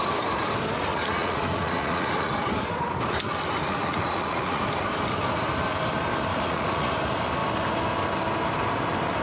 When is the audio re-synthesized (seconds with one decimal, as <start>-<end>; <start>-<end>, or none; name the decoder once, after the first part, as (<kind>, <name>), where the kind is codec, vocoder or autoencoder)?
0.9-2.3 (vocoder, Vocos); 3.6-4.6; 6.3-6.9